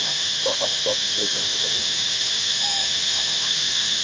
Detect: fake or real fake